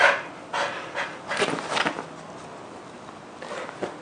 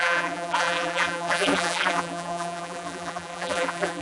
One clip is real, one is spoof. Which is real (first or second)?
first